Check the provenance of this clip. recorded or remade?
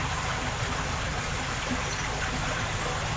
recorded